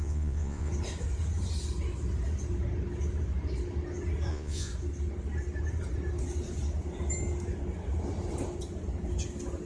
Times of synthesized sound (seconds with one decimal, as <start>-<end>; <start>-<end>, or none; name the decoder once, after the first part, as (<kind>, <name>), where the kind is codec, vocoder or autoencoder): 0.0-0.7 (vocoder, Vocos); 4.3-4.7

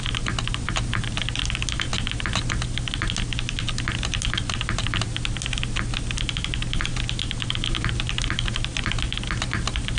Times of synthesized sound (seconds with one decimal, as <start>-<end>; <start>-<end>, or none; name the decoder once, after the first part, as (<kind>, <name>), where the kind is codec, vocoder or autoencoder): none